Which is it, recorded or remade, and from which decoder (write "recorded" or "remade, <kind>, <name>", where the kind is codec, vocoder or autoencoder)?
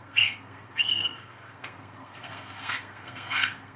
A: remade, codec, SNAC